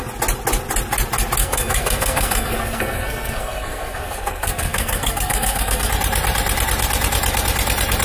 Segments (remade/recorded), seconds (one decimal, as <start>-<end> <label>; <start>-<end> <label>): 0.0-1.4 recorded; 1.4-5.9 remade; 5.9-8.0 recorded